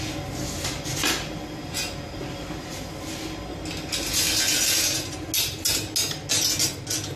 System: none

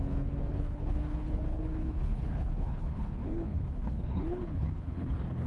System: codec, HILCodec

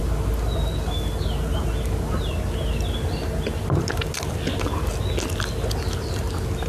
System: none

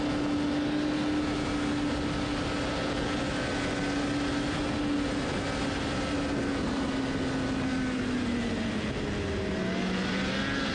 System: none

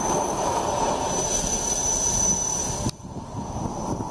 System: none